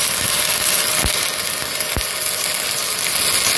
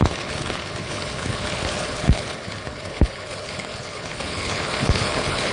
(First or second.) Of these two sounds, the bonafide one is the first